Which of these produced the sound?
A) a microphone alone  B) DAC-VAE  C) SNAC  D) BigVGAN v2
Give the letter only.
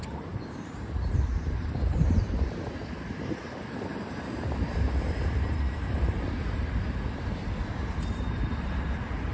D